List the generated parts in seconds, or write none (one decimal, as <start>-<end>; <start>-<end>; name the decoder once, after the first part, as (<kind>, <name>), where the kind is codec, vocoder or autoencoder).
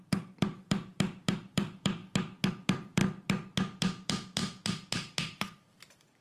0.0-2.0 (vocoder, BigVGAN v2); 2.5-3.0; 3.8-6.2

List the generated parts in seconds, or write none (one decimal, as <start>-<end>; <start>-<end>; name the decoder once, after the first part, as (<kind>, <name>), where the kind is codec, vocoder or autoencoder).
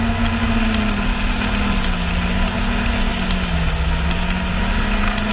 none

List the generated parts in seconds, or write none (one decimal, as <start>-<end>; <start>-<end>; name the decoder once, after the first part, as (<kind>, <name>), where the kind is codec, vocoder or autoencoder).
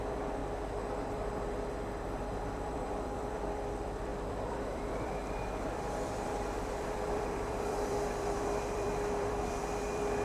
0.0-0.4 (vocoder, BigVGAN v2); 1.0-10.2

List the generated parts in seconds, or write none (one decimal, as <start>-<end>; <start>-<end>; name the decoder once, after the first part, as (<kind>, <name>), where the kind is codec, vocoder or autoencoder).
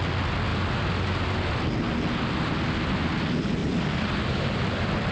3.6-5.1 (vocoder, BigVGAN v2)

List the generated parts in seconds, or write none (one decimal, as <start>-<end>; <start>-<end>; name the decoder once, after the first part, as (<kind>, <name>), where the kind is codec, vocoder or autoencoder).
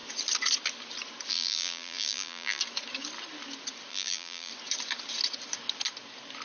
1.3-2.6 (vocoder, BigVGAN v2); 3.9-4.5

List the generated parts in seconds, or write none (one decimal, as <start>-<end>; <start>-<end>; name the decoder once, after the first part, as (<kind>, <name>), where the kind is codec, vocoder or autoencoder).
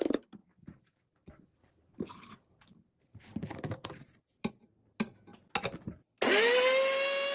0.4-4.5 (vocoder, BigVGAN v2)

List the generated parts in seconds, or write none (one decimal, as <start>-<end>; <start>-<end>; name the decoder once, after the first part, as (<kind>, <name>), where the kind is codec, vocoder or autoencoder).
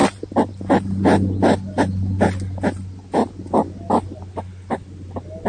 none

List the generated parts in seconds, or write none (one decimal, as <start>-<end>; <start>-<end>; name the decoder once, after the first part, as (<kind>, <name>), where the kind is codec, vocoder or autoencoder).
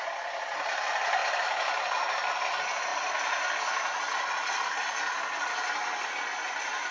none